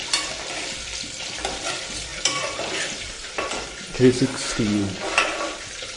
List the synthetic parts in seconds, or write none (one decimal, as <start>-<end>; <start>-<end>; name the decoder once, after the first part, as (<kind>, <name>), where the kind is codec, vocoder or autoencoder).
2.1-6.0 (vocoder, BigVGAN v2)